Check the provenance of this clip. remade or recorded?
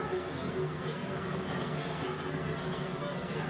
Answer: remade